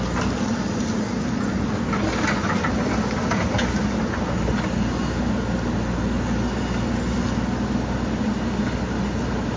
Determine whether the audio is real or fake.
real